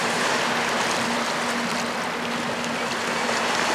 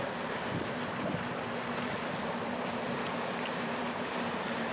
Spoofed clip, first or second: second